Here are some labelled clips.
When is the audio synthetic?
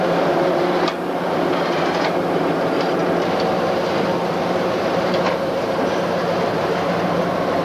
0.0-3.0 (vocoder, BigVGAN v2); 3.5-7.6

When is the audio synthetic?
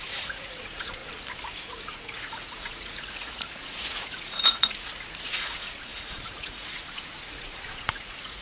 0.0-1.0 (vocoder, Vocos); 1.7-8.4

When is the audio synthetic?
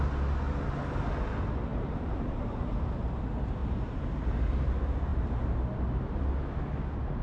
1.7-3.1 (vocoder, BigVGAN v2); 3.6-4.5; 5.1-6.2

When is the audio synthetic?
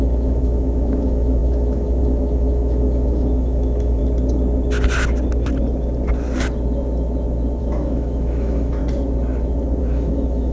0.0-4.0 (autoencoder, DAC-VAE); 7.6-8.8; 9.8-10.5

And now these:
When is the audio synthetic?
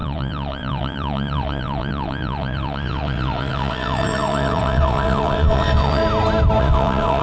0.0-6.0 (vocoder, WaveNeXt); 6.6-7.2